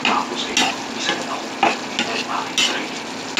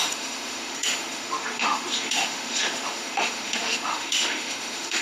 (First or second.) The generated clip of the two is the second